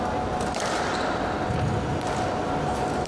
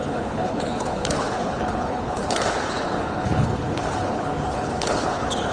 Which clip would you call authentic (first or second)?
first